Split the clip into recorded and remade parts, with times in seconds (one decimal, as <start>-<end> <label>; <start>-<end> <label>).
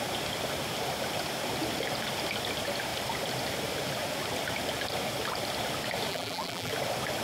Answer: 0.0-6.1 recorded; 6.1-6.7 remade; 6.7-7.2 recorded